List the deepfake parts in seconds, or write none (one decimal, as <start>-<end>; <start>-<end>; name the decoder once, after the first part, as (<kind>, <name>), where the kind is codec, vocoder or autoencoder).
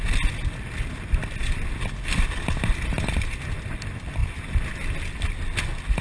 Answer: none